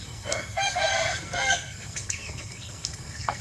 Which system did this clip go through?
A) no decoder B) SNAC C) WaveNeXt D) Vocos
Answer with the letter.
B